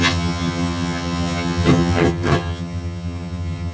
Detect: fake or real fake